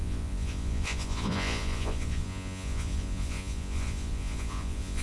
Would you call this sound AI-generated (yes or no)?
yes